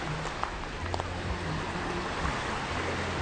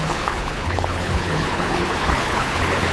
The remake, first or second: second